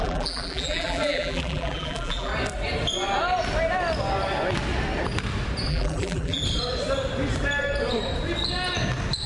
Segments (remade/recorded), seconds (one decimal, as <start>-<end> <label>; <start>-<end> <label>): 0.0-2.3 remade; 2.3-5.7 recorded; 5.7-6.4 remade; 6.4-9.3 recorded